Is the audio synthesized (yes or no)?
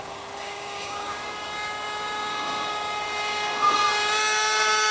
yes